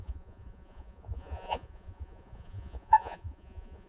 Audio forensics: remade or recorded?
remade